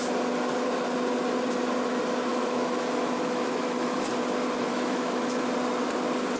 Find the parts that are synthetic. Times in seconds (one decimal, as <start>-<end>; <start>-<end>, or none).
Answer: 2.3-4.1; 4.7-5.4